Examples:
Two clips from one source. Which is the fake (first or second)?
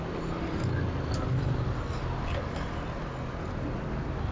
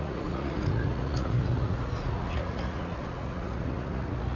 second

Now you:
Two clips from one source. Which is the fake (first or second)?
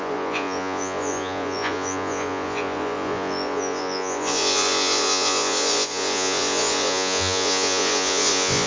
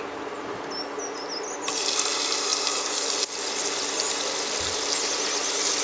first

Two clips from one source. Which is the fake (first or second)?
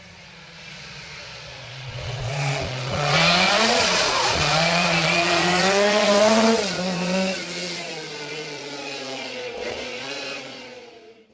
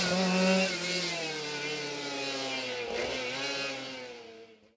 first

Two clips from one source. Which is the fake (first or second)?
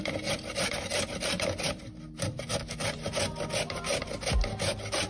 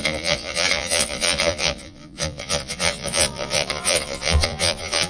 second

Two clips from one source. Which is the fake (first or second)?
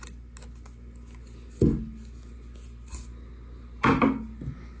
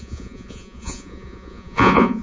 second